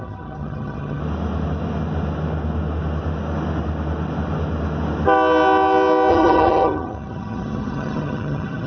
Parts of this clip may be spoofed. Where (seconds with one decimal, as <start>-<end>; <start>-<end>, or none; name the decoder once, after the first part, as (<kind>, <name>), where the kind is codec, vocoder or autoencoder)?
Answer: 0.0-1.0 (vocoder, HiFi-GAN); 6.1-8.7